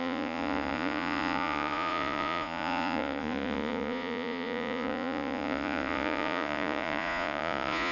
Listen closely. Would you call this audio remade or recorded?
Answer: remade